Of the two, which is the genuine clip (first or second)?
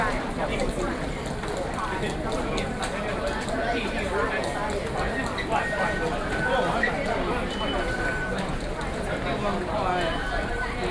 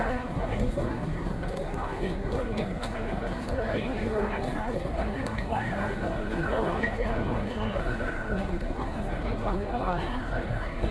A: first